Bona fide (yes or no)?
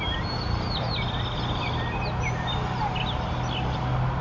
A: yes